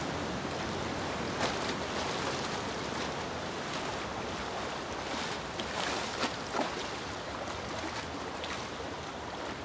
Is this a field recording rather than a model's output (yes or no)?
yes